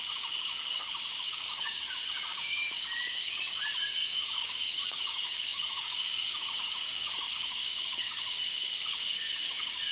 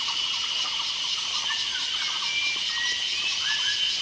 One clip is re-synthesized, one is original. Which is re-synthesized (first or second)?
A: first